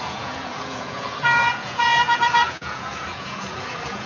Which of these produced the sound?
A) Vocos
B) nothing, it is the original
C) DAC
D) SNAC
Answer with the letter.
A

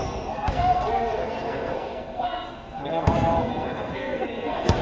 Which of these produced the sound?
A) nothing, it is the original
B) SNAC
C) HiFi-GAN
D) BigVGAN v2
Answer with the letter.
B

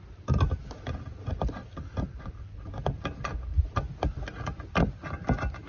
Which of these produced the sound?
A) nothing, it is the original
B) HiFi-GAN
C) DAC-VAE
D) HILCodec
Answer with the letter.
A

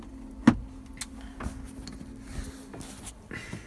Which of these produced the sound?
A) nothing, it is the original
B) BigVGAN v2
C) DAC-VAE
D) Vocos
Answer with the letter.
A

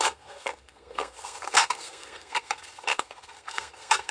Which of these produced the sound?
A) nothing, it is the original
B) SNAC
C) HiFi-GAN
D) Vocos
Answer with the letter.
B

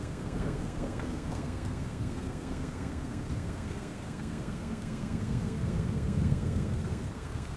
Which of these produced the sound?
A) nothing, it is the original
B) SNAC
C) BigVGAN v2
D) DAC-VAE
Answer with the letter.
B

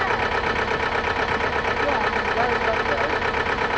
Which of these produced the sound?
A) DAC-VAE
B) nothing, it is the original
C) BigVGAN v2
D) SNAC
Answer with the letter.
B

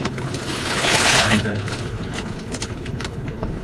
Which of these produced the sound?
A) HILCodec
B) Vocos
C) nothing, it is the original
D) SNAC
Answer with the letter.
A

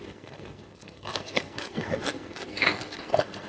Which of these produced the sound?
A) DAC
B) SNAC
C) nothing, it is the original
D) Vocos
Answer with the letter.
B